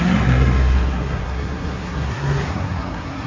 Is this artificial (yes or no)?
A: yes